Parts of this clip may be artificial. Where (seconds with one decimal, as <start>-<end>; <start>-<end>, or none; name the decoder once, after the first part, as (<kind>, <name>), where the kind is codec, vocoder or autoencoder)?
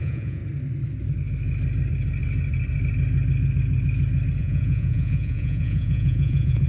0.0-0.4 (vocoder, Vocos); 4.4-6.7